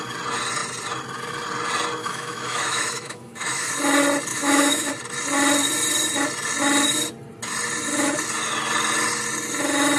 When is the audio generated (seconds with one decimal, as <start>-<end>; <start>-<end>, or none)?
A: 2.0-3.7; 4.3-4.9